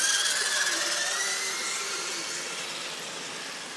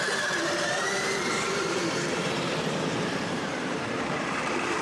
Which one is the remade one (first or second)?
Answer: second